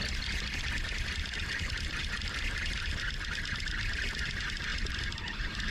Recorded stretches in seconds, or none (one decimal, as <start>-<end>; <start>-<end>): 0.0-1.4; 2.0-4.7